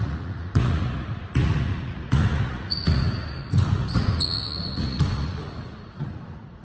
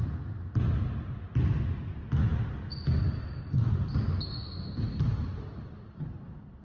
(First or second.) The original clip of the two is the second